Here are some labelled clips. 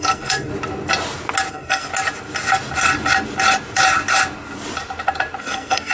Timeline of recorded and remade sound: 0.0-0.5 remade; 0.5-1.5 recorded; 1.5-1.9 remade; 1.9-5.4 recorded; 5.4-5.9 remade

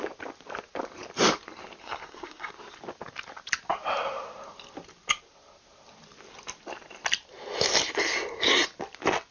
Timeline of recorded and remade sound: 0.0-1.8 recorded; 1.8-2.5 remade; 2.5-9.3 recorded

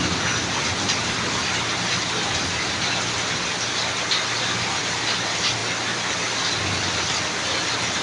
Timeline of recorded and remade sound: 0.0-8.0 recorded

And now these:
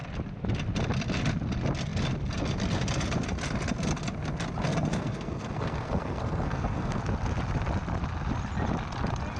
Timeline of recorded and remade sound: 0.0-4.9 recorded; 4.9-7.0 remade; 7.0-9.4 recorded

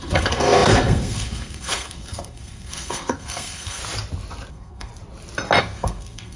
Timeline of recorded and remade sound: 0.0-3.8 remade; 3.8-4.5 recorded; 4.5-4.9 remade; 4.9-5.6 recorded; 5.6-6.4 remade

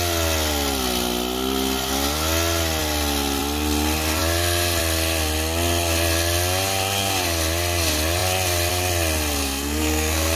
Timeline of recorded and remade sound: 0.0-9.4 recorded; 9.4-10.4 remade

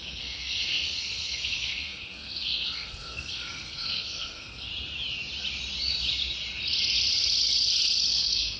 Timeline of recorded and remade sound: 0.0-4.7 remade; 4.7-8.1 recorded; 8.1-8.6 remade

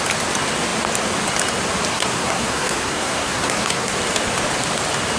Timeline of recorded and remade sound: 0.0-1.9 recorded; 1.9-3.9 remade; 3.9-5.2 recorded